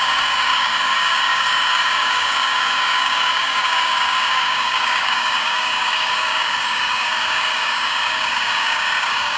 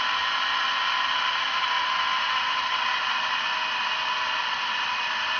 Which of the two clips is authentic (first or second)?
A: second